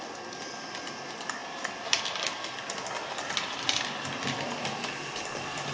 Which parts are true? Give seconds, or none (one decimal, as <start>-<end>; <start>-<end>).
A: 0.0-1.4; 4.1-5.7